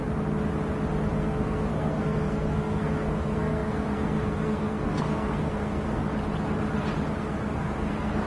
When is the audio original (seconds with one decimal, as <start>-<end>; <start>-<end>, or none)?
0.0-1.1; 6.0-7.2